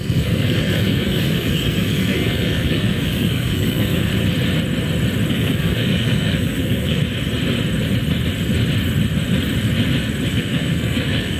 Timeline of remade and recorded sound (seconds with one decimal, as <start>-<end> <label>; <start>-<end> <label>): 0.0-4.1 remade; 4.1-5.3 recorded; 5.3-7.0 remade; 7.0-10.3 recorded; 10.3-11.4 remade